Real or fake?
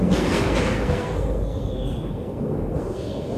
fake